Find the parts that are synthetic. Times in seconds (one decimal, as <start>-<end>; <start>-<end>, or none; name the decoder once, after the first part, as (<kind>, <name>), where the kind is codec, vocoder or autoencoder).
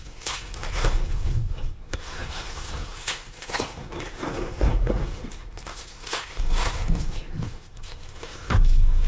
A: 0.0-9.1 (codec, SNAC)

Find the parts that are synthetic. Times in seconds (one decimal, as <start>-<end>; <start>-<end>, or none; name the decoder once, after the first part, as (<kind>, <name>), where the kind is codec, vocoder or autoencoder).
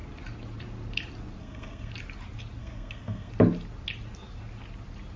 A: 1.4-1.9 (codec, SNAC); 2.6-3.3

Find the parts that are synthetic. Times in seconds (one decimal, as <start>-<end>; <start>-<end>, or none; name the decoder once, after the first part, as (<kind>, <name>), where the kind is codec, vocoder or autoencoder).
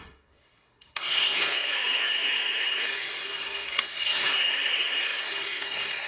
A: 0.0-6.1 (codec, SNAC)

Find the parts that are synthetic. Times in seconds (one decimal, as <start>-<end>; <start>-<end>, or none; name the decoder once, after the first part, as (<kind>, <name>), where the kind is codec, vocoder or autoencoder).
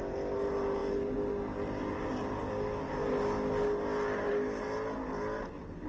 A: none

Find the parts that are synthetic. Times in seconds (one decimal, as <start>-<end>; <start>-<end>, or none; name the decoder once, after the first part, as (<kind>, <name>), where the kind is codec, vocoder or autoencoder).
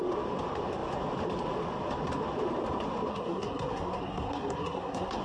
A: 3.1-5.2 (codec, SNAC)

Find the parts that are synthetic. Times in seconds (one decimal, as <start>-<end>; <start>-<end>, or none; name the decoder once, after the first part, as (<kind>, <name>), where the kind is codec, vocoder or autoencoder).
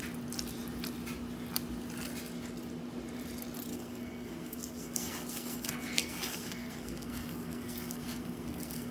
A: 3.7-8.9 (codec, SNAC)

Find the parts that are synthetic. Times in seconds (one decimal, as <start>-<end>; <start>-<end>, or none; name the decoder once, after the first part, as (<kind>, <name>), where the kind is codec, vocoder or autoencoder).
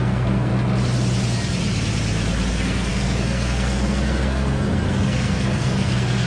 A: 0.0-0.5 (codec, SNAC); 2.5-6.3